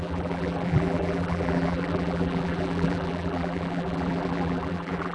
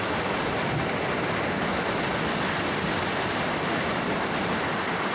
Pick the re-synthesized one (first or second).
first